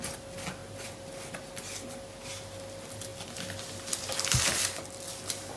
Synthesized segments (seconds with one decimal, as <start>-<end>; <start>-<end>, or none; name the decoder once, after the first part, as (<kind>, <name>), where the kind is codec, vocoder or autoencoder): none